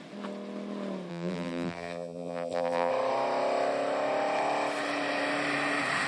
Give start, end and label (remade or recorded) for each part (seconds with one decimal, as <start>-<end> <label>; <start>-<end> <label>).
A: 0.0-1.1 recorded; 1.1-2.9 remade; 2.9-6.1 recorded